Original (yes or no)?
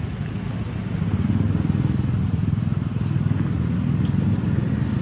yes